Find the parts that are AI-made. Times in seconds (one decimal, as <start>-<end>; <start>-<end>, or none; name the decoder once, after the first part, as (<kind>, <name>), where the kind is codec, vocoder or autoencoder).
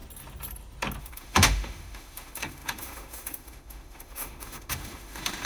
1.0-5.5 (autoencoder, DAC-VAE)